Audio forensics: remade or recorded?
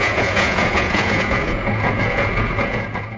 remade